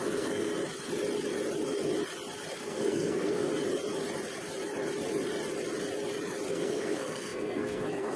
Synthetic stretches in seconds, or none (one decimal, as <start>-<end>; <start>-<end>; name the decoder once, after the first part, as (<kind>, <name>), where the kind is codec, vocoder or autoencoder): 0.0-0.5 (codec, SNAC); 2.6-3.5; 6.5-8.2